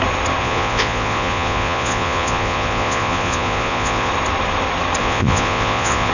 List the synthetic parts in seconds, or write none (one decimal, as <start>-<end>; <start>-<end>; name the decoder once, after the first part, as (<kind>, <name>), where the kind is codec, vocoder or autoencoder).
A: 0.4-4.1 (vocoder, Vocos); 5.0-6.1